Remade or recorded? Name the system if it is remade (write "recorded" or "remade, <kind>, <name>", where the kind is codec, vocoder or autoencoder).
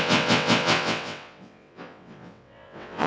remade, vocoder, WaveNeXt